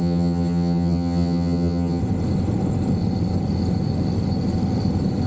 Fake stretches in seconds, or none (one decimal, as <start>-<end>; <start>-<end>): 0.0-2.0